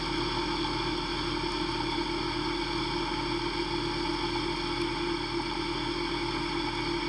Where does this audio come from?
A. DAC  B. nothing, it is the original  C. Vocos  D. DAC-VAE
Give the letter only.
B